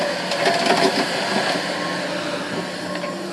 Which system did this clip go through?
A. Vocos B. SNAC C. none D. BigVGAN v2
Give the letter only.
C